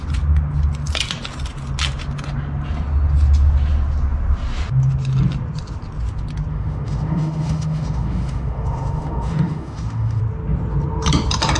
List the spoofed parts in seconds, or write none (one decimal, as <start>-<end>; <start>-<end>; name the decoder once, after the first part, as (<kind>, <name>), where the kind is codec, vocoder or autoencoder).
6.5-10.2 (autoencoder, DAC-VAE)